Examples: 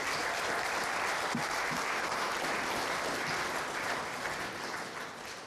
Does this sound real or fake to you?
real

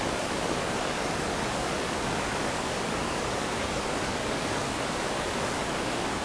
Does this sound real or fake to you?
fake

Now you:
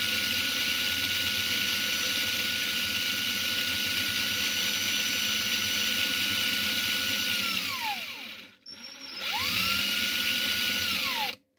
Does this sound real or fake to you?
real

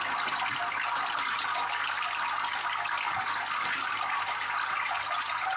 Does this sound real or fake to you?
real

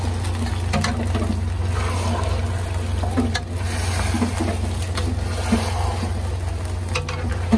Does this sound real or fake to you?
real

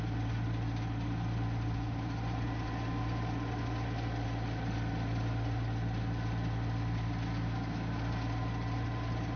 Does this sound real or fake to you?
real